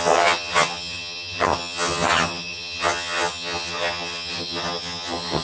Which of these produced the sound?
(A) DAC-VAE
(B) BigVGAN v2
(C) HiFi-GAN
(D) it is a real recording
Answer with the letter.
C